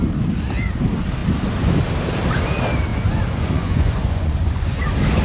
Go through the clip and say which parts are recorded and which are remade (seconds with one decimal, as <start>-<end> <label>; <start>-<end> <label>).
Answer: 0.0-2.9 recorded; 2.9-4.8 remade; 4.8-5.2 recorded